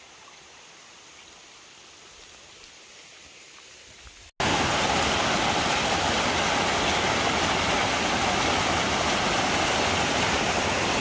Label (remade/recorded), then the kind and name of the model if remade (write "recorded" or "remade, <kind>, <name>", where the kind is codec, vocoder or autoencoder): recorded